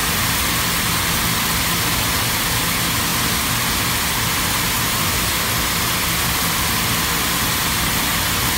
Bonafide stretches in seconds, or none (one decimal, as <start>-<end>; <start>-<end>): 0.0-8.6